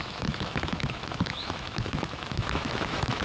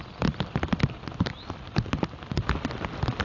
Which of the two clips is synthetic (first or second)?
first